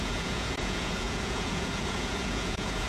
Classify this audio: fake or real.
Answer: fake